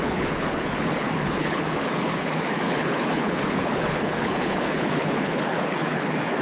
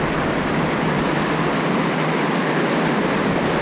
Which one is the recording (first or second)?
second